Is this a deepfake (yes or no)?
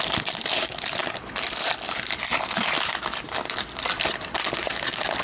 no